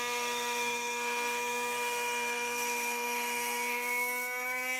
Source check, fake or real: fake